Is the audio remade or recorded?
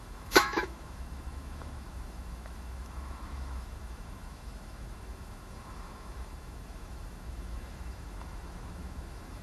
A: remade